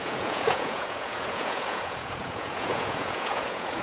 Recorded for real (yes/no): no